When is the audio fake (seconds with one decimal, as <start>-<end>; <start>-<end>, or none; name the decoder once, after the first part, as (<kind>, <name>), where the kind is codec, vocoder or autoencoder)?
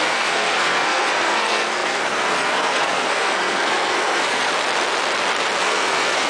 0.0-4.5 (codec, SNAC); 5.6-6.3